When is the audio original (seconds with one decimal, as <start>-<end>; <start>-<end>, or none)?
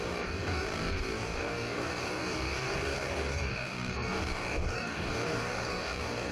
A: none